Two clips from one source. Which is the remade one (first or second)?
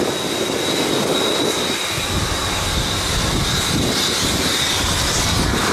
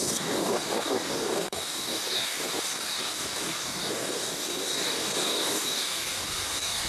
second